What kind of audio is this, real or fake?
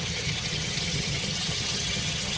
fake